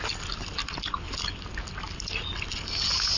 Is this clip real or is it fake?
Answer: real